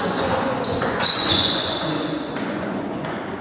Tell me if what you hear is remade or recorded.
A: remade